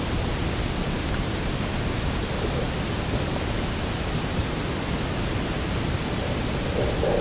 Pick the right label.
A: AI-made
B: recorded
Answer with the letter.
B